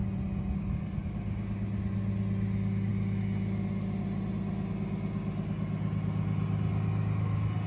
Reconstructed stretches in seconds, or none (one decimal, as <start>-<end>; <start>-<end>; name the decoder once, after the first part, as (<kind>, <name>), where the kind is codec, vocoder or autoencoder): none